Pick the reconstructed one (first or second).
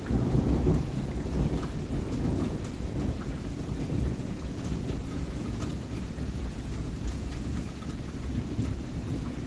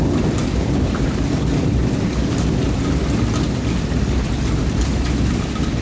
first